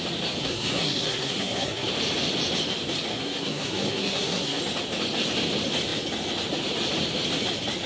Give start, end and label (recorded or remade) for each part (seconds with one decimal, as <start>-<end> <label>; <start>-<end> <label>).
0.0-0.4 recorded; 0.4-1.9 remade; 1.9-3.1 recorded; 3.1-4.6 remade; 4.6-7.9 recorded